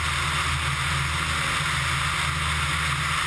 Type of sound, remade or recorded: recorded